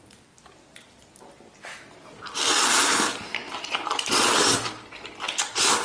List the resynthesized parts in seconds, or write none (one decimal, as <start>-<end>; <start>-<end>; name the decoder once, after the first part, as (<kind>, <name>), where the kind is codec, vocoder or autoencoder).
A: 3.4-4.0 (vocoder, BigVGAN v2)